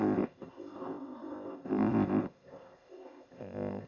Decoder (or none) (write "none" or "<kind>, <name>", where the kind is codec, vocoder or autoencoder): codec, ZipCodec